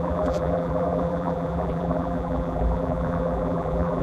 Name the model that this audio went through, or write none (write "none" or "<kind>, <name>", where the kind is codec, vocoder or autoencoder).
vocoder, BigVGAN v2